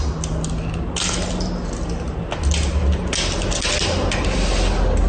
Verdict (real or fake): real